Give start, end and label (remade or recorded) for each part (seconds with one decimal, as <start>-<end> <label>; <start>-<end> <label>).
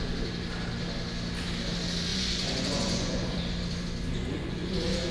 0.0-2.1 recorded; 2.1-3.4 remade; 3.4-4.1 recorded; 4.1-5.1 remade